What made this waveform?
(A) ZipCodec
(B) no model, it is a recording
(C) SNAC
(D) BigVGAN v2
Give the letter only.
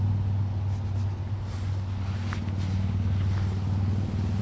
B